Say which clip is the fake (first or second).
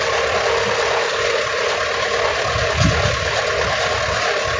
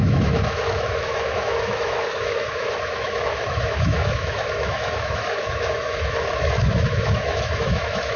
second